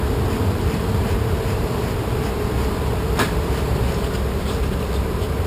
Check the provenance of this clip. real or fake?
fake